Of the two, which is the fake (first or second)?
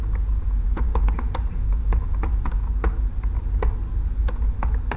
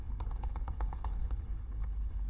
second